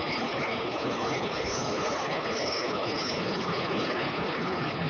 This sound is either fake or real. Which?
fake